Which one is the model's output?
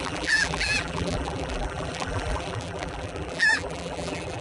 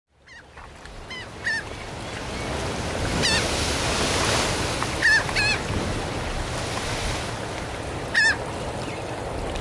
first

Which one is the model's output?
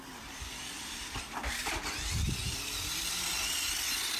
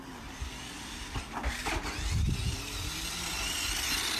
first